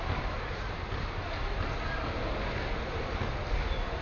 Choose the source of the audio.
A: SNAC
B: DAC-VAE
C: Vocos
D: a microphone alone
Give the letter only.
D